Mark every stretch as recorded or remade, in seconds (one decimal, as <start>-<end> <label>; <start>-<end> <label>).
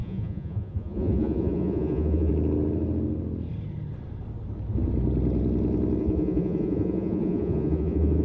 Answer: 0.0-2.3 remade; 2.3-6.0 recorded; 6.0-8.2 remade